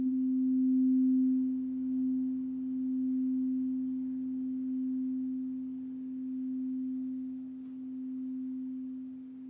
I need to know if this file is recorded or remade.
recorded